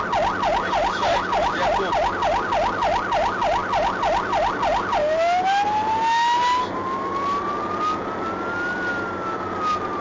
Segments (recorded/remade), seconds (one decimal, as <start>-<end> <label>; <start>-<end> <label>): 0.0-10.0 recorded